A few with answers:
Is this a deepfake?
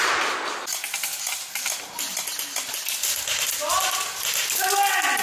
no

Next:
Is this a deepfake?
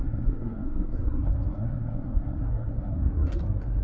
yes